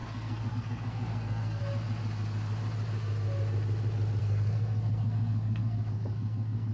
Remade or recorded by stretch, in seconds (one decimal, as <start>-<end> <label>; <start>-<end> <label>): 0.0-1.6 remade; 1.6-4.2 recorded; 4.2-6.7 remade